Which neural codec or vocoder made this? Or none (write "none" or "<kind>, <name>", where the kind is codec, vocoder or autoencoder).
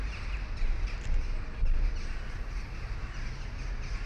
none